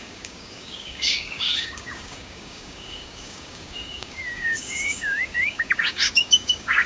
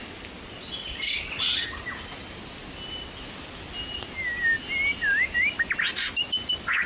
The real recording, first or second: second